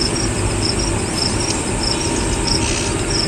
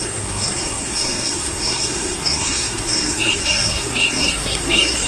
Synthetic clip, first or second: second